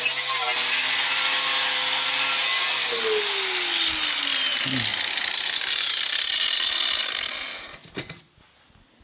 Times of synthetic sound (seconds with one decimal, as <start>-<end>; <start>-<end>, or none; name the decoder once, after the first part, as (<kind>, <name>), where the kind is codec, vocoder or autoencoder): none

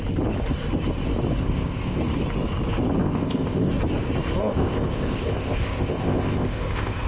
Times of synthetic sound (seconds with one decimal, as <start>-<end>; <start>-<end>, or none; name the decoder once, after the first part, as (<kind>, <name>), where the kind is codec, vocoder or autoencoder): 1.4-2.0 (codec, ZipCodec); 3.0-3.7; 4.4-7.1